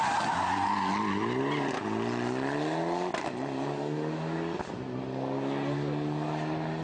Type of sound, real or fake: real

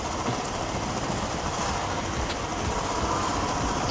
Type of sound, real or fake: real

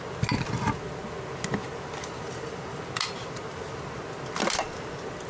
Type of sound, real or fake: real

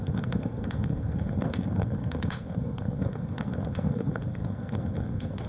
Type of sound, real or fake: fake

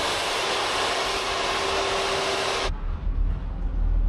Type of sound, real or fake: real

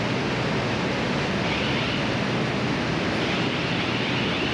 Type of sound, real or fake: real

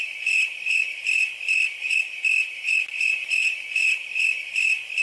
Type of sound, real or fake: real